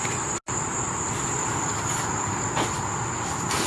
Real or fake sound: real